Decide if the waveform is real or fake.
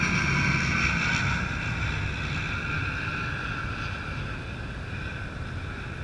real